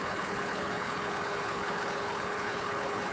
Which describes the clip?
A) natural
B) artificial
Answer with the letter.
B